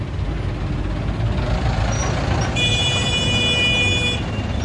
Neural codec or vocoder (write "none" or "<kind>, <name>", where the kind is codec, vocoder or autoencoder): none